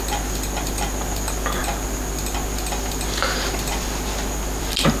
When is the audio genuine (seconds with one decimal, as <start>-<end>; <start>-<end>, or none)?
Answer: 0.0-5.0